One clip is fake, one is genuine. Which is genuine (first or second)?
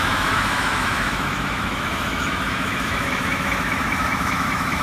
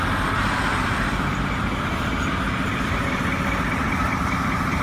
second